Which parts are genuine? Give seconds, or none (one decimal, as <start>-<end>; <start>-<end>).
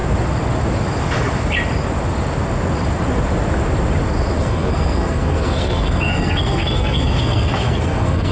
0.0-4.4